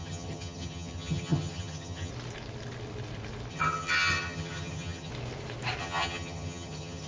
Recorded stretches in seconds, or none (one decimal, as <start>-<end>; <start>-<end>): 2.1-3.5; 5.1-5.8